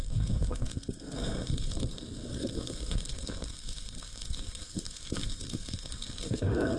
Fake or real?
fake